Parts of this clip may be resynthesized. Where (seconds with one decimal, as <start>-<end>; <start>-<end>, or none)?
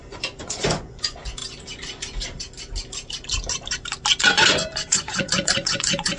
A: 0.0-1.4; 4.2-6.2